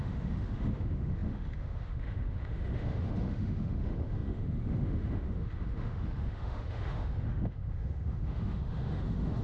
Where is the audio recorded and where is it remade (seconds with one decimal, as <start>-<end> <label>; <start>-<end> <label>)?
0.0-9.4 remade